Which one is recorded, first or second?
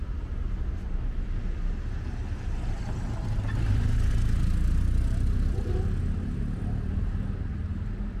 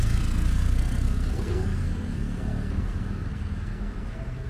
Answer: first